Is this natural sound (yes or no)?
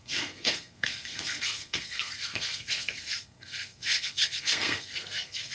no